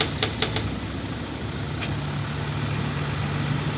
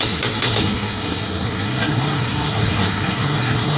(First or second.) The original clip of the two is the first